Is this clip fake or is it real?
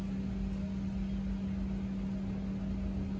real